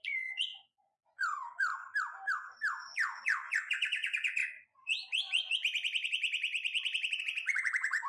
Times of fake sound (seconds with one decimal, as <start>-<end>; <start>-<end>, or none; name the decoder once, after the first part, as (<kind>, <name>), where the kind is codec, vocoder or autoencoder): 0.0-1.7 (vocoder, Vocos); 2.9-8.1